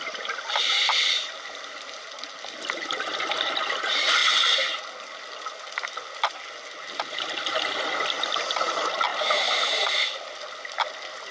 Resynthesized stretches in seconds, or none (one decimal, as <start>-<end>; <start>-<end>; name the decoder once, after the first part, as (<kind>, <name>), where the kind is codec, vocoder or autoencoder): none